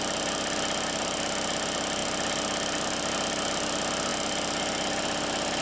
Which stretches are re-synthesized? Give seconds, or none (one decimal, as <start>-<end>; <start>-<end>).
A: none